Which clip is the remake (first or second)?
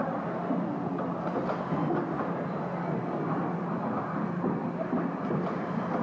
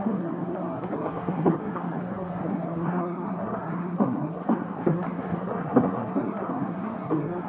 second